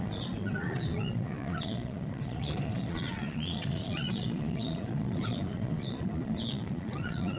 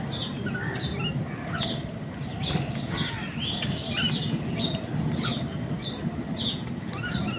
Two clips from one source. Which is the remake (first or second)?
first